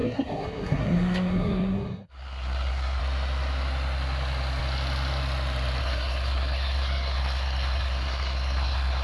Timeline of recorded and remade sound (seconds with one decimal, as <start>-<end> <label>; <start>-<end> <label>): 0.0-3.0 remade; 3.0-5.8 recorded; 5.8-9.0 remade